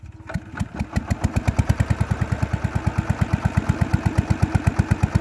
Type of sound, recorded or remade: recorded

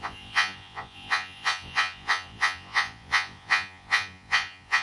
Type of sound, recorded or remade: remade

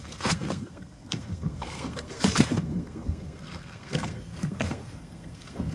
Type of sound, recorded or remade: remade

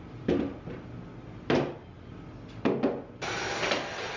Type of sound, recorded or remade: recorded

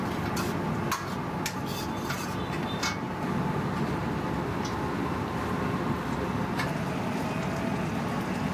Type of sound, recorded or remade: recorded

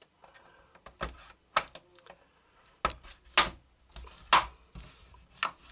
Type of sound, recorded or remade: recorded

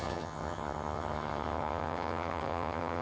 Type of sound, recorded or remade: remade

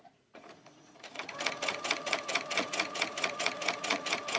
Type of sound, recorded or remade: remade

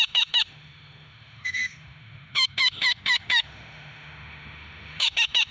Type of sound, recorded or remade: remade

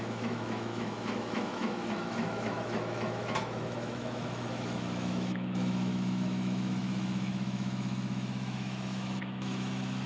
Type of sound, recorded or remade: remade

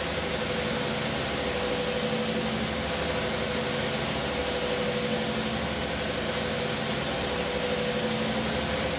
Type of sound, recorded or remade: recorded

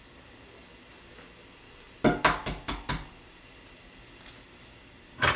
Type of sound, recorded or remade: recorded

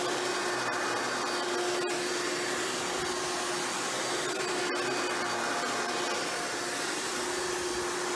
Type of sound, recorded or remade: recorded